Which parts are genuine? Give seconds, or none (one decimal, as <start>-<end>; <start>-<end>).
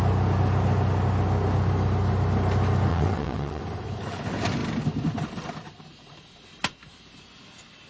0.0-2.9; 3.6-7.9